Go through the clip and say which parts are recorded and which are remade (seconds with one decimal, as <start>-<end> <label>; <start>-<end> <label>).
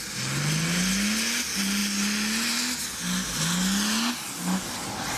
0.0-5.2 recorded